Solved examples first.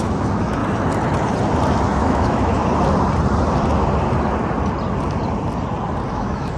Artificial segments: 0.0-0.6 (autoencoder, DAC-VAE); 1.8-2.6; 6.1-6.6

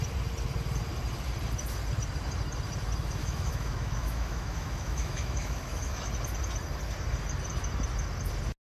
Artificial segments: 3.2-6.1 (autoencoder, DAC-VAE)

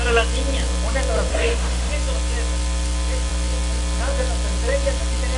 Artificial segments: 1.3-1.9 (autoencoder, DAC-VAE)

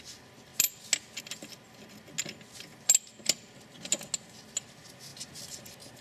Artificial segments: none

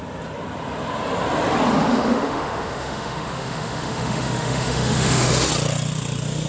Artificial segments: 1.9-5.5 (autoencoder, DAC-VAE)